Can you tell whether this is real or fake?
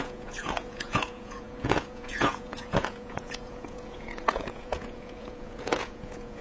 fake